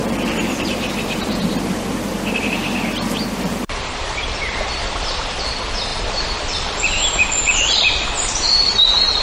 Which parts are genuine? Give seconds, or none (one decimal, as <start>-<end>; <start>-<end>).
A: 1.3-3.3; 5.5-5.9